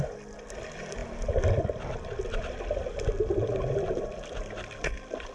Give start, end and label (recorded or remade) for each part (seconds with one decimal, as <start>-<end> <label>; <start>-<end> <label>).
0.0-5.3 recorded